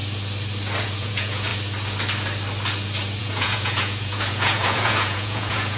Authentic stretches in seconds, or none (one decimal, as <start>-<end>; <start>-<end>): 0.0-0.8; 1.5-3.2